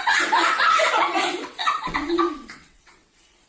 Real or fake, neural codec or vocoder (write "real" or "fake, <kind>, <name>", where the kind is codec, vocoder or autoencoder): fake, vocoder, WaveNeXt